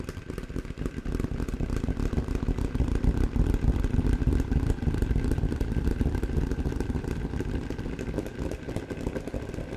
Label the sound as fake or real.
real